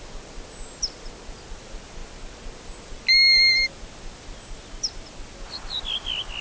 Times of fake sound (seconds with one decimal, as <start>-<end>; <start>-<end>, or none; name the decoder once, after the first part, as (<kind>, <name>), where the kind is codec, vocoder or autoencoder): none